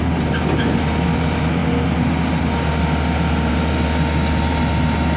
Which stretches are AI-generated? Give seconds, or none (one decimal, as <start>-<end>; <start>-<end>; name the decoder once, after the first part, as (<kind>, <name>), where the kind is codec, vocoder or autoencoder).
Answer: none